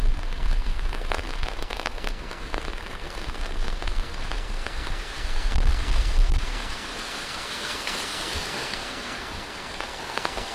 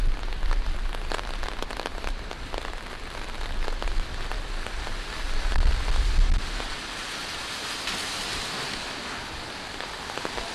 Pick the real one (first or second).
second